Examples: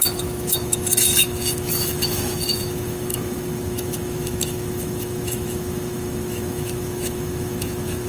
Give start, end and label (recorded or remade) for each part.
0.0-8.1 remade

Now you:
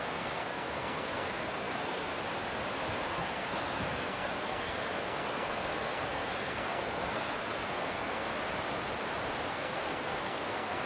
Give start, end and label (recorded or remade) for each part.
0.0-2.1 remade; 2.1-3.1 recorded; 3.1-8.3 remade; 8.3-9.5 recorded; 9.5-10.9 remade